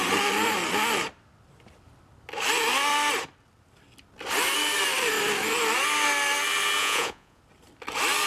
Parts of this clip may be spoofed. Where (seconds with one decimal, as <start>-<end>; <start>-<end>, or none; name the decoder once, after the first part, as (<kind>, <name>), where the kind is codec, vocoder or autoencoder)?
6.8-7.4 (vocoder, Vocos)